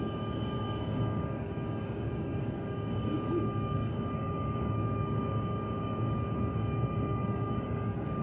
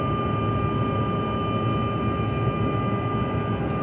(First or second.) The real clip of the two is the second